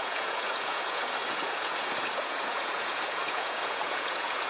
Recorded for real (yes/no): no